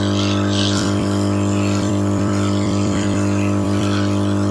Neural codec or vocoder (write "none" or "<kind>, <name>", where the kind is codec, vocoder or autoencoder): vocoder, BigVGAN v2